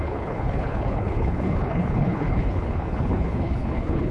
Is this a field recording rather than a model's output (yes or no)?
no